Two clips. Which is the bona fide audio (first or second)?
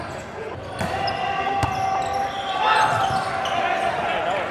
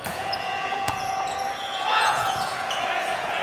first